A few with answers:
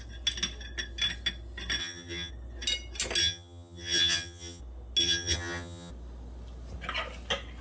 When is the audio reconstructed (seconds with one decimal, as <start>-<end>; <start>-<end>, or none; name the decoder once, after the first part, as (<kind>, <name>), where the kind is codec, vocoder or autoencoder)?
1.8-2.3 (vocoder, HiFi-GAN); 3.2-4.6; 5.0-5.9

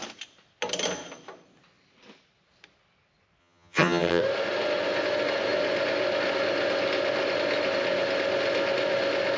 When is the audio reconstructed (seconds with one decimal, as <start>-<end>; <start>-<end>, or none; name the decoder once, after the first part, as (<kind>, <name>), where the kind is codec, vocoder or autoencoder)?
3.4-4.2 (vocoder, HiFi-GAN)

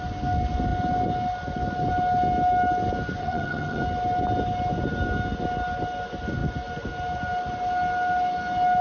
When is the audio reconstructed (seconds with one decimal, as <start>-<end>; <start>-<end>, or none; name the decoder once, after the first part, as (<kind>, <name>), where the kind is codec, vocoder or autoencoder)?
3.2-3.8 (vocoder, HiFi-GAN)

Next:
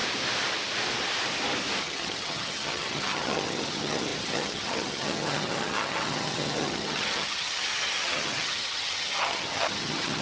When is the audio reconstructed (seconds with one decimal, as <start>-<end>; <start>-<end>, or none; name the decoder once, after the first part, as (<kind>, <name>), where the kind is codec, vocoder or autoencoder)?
1.8-10.2 (vocoder, HiFi-GAN)

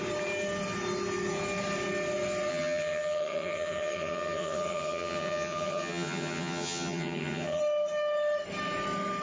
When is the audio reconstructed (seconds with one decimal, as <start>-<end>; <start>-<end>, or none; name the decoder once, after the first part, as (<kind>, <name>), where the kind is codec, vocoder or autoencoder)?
2.5-7.6 (vocoder, HiFi-GAN)

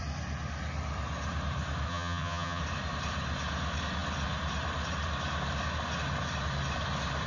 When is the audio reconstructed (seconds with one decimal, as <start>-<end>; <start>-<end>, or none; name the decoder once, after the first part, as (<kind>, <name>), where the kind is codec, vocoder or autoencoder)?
1.9-2.6 (vocoder, HiFi-GAN)

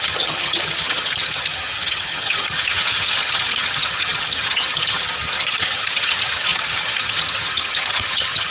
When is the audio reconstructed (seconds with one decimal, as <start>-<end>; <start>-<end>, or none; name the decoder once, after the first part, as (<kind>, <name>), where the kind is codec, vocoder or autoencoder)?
0.0-8.5 (vocoder, HiFi-GAN)

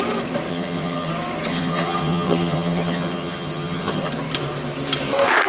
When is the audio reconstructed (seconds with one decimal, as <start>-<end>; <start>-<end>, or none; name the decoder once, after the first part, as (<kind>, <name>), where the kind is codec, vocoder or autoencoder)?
0.5-1.1 (vocoder, HiFi-GAN); 1.5-4.1